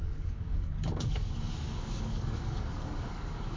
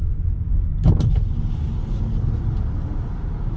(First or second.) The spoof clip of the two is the first